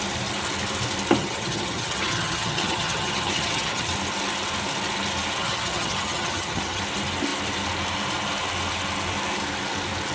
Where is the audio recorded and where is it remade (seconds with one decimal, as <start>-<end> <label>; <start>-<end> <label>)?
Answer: 0.0-1.2 recorded; 1.2-3.9 remade; 3.9-5.4 recorded; 5.4-6.8 remade; 6.8-10.1 recorded